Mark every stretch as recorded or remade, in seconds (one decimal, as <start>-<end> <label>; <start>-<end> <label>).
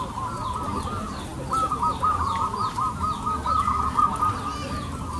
0.0-5.2 recorded